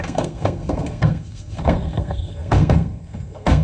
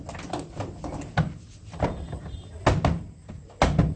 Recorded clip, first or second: second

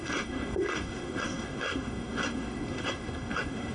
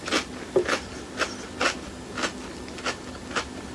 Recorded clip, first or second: second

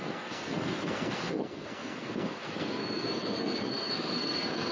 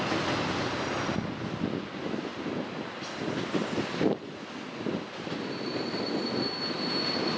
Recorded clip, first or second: second